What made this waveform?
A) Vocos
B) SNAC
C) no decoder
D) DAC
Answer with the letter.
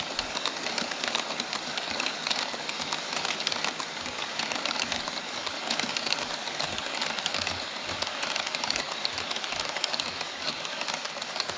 D